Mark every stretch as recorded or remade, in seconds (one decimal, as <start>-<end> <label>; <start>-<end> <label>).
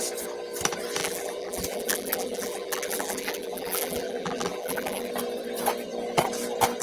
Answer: 0.0-1.0 recorded; 1.0-5.1 remade; 5.1-6.8 recorded